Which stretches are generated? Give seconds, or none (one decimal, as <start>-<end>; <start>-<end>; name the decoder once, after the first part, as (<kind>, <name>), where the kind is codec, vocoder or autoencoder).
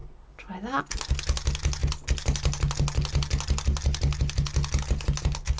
none